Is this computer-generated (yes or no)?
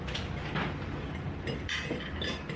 no